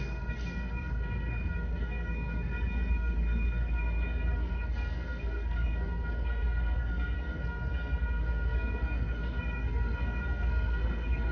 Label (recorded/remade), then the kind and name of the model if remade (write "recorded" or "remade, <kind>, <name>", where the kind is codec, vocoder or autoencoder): remade, codec, SNAC